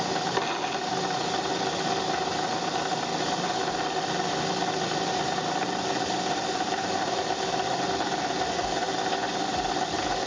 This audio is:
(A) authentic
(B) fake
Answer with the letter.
A